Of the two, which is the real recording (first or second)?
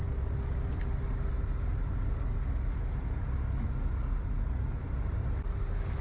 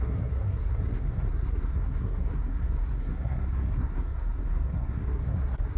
first